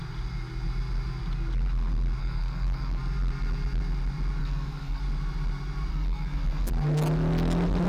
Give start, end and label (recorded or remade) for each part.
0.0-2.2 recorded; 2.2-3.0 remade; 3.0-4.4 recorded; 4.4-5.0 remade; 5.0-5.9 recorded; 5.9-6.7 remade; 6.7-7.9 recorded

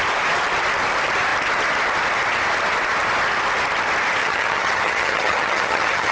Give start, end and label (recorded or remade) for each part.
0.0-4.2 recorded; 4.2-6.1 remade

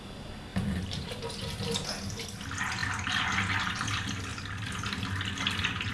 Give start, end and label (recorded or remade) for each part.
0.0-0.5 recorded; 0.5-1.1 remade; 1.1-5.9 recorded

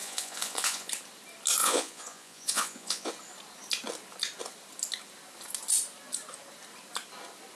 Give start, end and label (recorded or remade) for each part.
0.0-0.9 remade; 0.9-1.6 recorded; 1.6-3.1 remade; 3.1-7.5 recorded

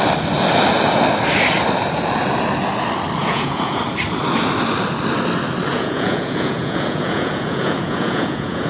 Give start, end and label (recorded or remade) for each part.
0.0-3.2 recorded; 3.2-3.8 remade; 3.8-5.7 recorded; 5.7-8.7 remade